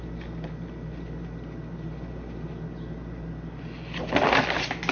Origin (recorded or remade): recorded